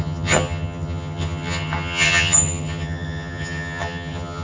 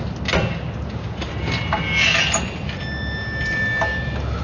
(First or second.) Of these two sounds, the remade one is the first